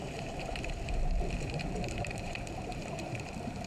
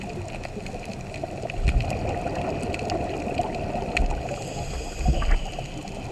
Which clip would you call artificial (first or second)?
first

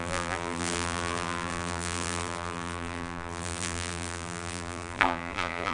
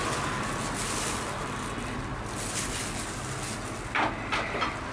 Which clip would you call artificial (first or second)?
first